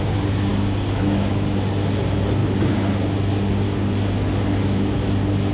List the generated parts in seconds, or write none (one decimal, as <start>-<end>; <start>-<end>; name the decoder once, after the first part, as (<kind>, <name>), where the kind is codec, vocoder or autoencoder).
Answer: none